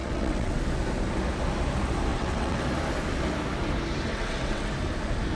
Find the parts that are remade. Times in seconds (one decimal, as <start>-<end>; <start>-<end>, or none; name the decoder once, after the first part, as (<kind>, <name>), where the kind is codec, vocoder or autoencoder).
0.0-0.6 (vocoder, WaveNeXt); 2.1-2.6; 4.1-4.7